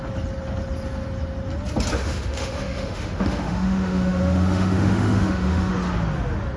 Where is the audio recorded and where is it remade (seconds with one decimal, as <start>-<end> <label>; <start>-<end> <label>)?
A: 0.0-2.0 recorded; 2.0-5.7 remade; 5.7-6.6 recorded